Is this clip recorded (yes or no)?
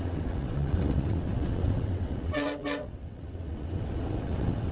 no